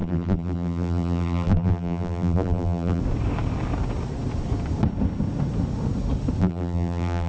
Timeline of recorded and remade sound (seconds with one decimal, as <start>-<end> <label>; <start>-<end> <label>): 0.0-3.0 remade; 3.0-6.4 recorded; 6.4-7.3 remade